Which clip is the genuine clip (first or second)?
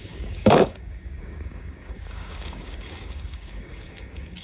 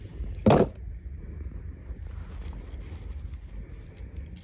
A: second